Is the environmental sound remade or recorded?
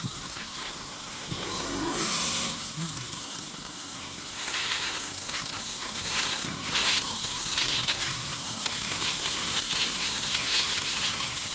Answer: remade